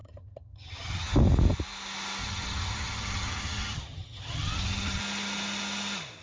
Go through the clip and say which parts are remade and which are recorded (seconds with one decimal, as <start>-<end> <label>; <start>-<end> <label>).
0.0-1.1 remade; 1.1-2.2 recorded; 2.2-5.0 remade; 5.0-6.2 recorded